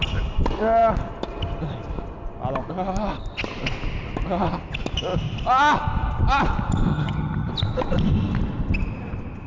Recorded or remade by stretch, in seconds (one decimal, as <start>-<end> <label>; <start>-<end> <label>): 0.0-6.9 recorded; 6.9-7.5 remade; 7.5-9.5 recorded

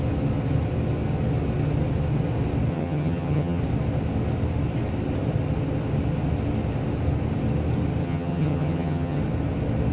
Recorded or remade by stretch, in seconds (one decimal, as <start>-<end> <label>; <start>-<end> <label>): 0.0-2.7 recorded; 2.7-3.6 remade; 3.6-8.0 recorded; 8.0-9.2 remade; 9.2-9.9 recorded

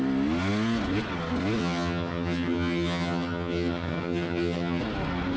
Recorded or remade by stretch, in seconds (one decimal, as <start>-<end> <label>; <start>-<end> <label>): 0.0-1.6 recorded; 1.6-4.8 remade; 4.8-5.4 recorded

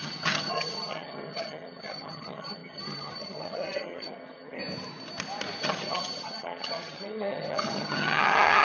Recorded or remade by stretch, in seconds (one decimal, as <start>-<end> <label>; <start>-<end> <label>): 0.0-4.6 remade; 4.6-5.6 recorded; 5.6-8.6 remade

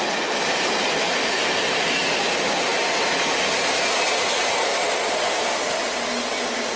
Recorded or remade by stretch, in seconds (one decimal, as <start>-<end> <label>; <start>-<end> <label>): 0.0-6.8 recorded